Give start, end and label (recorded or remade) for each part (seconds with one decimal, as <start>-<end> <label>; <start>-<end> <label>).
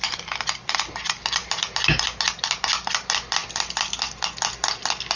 0.0-5.2 recorded